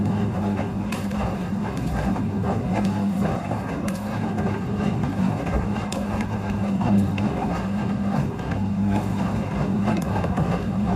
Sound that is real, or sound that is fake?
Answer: fake